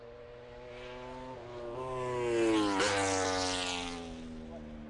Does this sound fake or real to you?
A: real